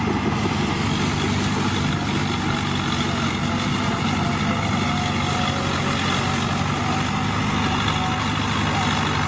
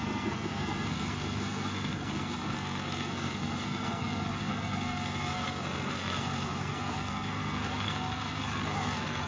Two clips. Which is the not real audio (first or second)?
second